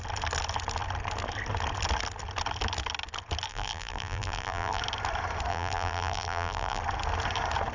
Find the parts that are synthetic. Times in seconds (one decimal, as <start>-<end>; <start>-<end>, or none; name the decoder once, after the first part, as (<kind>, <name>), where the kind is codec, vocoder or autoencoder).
3.5-4.8 (vocoder, BigVGAN v2); 5.5-6.8